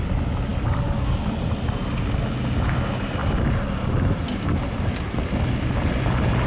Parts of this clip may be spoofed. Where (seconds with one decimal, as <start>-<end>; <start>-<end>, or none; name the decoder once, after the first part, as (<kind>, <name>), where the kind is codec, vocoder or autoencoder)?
0.5-1.3 (codec, DAC)